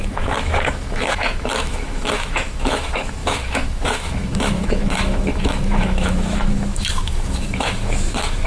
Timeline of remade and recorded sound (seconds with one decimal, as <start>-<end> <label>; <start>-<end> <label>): 0.0-8.5 remade